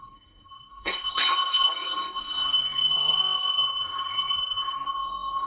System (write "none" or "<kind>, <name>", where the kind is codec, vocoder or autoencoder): codec, SNAC